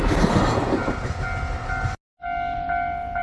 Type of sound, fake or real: real